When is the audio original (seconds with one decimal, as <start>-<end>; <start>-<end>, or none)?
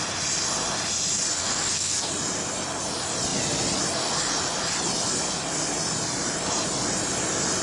0.0-1.4; 2.1-7.6